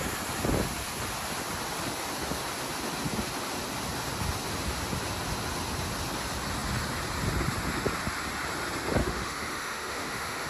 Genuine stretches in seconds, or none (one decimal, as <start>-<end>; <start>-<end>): 0.0-9.0